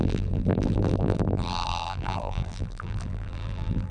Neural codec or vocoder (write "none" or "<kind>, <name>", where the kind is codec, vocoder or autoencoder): vocoder, BigVGAN v2